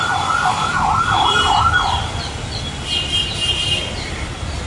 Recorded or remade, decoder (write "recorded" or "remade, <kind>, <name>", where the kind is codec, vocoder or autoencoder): remade, vocoder, BigVGAN v2